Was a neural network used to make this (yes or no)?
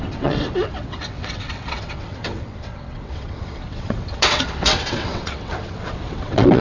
yes